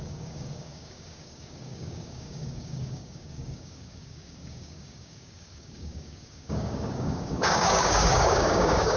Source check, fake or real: fake